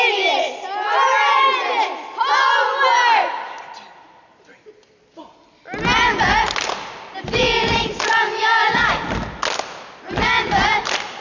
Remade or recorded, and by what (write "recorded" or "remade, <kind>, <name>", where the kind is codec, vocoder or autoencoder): recorded